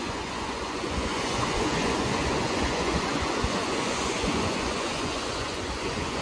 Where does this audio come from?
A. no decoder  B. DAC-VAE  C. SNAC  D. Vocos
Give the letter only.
D